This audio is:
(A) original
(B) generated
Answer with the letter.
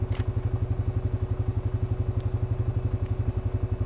A